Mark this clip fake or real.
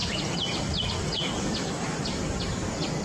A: real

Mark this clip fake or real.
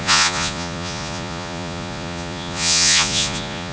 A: fake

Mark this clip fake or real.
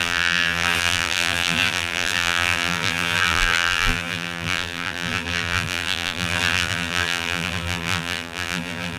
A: fake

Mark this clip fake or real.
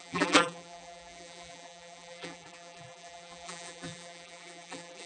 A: fake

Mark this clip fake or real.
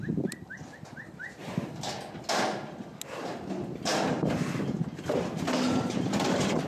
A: real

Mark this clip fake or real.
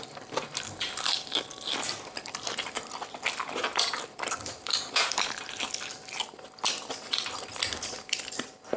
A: fake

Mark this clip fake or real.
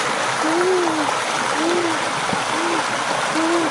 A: real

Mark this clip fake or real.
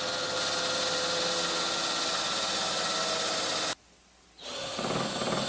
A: real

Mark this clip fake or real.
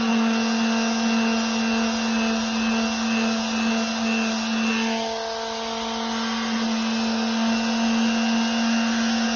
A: real